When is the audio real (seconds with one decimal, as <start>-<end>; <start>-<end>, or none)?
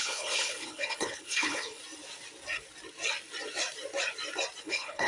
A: 1.8-4.6